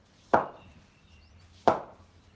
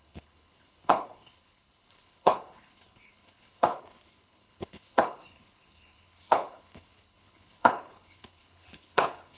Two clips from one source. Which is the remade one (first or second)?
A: second